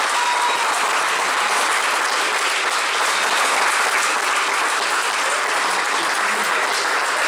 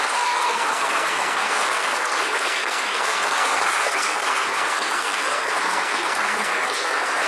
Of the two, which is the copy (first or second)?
second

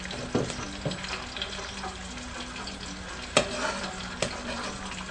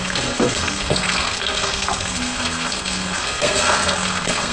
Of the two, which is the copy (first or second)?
second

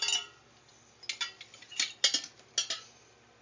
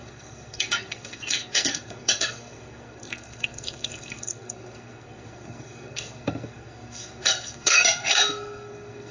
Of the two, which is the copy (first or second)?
second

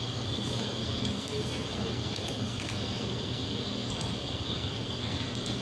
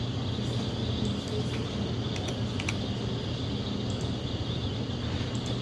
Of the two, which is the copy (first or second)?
first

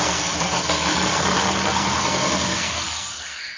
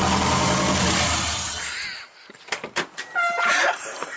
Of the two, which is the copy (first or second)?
first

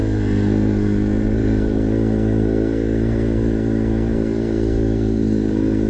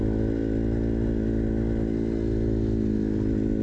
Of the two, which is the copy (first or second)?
first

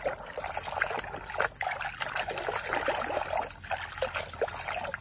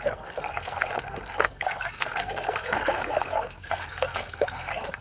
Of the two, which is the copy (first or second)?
second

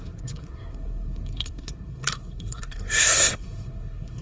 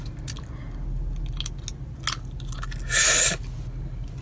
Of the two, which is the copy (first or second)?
first